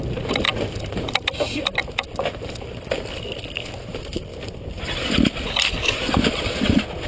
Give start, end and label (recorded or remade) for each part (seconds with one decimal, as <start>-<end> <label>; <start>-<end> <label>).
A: 0.0-7.1 recorded